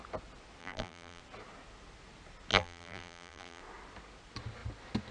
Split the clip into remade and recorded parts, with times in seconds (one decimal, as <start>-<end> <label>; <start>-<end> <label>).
0.0-0.6 recorded; 0.6-1.2 remade; 1.2-2.5 recorded; 2.5-3.6 remade; 3.6-5.1 recorded